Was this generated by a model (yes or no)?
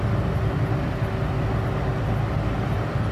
no